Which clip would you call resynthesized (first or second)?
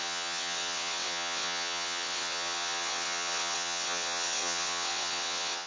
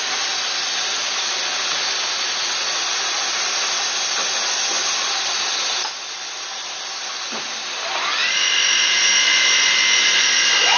first